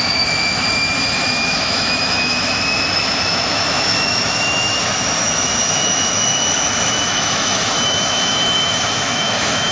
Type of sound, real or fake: fake